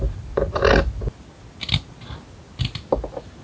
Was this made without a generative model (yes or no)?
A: yes